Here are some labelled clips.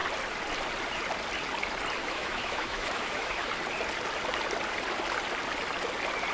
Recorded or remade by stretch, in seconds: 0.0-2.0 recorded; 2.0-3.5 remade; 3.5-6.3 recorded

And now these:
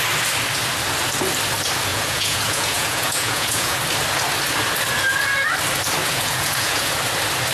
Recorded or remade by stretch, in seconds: 0.0-1.9 recorded; 1.9-3.8 remade; 3.8-6.0 recorded; 6.0-6.9 remade; 6.9-7.5 recorded